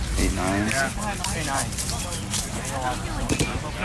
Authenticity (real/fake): real